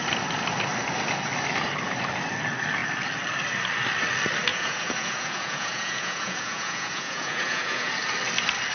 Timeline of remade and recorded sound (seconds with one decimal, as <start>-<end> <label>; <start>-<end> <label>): 0.0-4.5 recorded; 4.5-7.9 remade; 7.9-8.7 recorded